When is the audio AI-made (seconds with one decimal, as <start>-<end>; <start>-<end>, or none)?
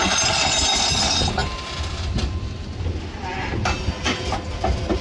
none